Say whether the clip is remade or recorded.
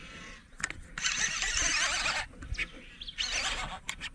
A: recorded